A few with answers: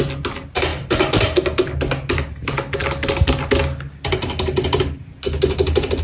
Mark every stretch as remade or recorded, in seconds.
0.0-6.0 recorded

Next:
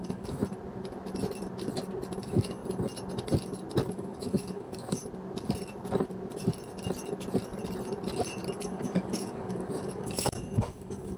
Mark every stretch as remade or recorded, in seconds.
0.0-0.4 remade; 0.4-2.2 recorded; 2.2-2.6 remade; 2.6-3.9 recorded; 3.9-5.0 remade; 5.0-8.5 recorded; 8.5-11.2 remade

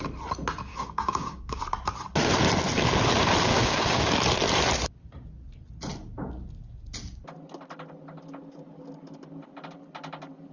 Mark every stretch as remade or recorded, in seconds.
0.0-0.7 recorded; 0.7-1.6 remade; 1.6-3.5 recorded; 3.5-4.1 remade; 4.1-10.5 recorded

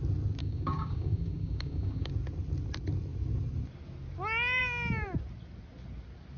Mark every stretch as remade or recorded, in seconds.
0.0-0.4 recorded; 0.4-2.1 remade; 2.1-6.4 recorded

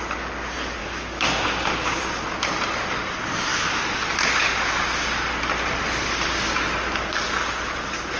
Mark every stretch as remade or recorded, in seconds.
0.0-0.8 recorded; 0.8-2.0 remade; 2.0-8.2 recorded

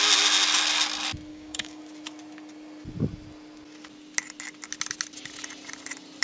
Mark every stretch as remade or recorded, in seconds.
0.0-1.3 recorded; 1.3-1.8 remade; 1.8-6.2 recorded